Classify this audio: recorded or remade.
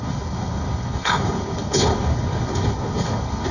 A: remade